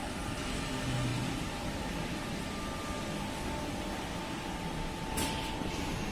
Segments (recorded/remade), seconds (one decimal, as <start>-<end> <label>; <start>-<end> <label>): 0.0-0.6 remade; 0.6-1.1 recorded; 1.1-2.3 remade; 2.3-6.1 recorded